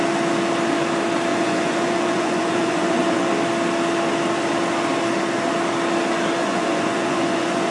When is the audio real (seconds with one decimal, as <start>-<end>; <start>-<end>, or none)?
0.0-1.3; 3.3-6.4